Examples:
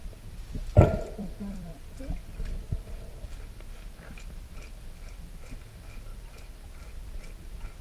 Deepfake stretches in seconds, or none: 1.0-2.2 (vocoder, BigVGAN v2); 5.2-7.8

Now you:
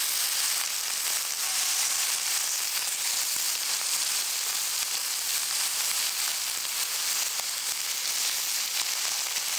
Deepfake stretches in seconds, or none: 2.3-5.0 (vocoder, BigVGAN v2)

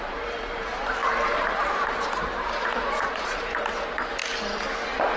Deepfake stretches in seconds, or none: 0.0-4.2 (vocoder, BigVGAN v2)

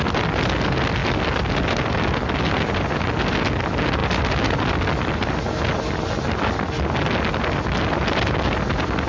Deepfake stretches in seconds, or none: none

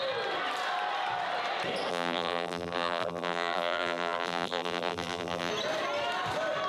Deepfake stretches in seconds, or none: 1.9-5.5 (vocoder, BigVGAN v2)

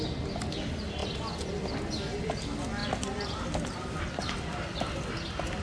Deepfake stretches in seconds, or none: none

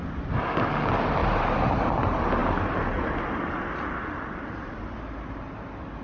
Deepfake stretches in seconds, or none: 1.2-1.9 (vocoder, BigVGAN v2)